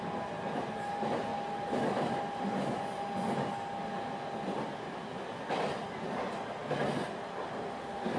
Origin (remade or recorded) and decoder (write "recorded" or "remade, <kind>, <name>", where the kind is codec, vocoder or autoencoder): recorded